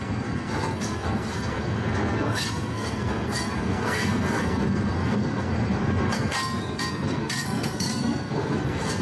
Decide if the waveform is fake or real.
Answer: fake